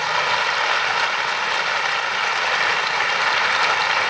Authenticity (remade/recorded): recorded